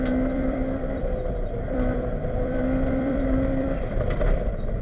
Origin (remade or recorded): remade